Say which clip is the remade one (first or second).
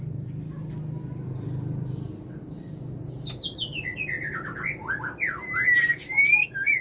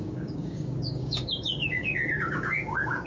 second